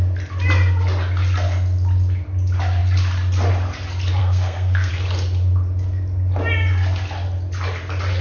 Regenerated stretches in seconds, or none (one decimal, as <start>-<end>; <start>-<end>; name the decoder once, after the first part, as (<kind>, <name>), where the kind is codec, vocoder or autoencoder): 4.2-4.9 (codec, SNAC)